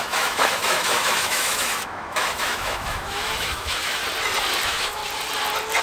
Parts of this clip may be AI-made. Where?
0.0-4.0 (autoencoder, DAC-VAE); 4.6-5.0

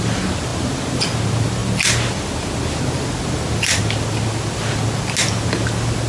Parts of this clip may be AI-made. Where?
none

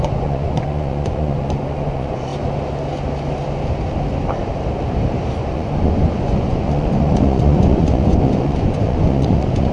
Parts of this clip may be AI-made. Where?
0.0-2.3 (vocoder, Vocos); 5.5-9.7